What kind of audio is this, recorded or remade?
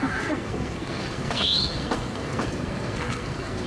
remade